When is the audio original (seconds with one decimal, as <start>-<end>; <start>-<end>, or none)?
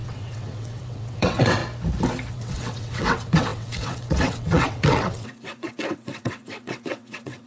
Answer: 1.6-2.3